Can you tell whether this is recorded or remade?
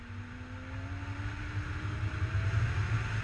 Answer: recorded